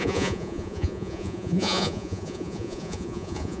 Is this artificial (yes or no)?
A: yes